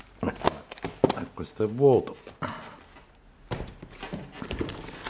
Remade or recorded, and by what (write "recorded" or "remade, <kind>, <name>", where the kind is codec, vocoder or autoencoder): recorded